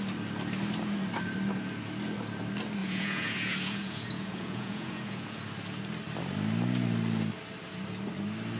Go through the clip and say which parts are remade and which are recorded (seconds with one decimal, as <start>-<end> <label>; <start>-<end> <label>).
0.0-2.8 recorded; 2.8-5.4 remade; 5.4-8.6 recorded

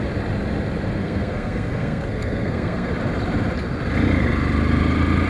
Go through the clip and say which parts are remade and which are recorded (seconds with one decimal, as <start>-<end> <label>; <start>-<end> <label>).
0.0-1.0 recorded; 1.0-2.9 remade; 2.9-5.3 recorded

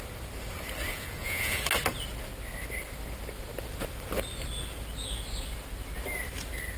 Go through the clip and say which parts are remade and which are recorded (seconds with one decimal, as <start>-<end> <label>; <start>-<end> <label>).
0.0-0.9 recorded; 0.9-1.6 remade; 1.6-6.8 recorded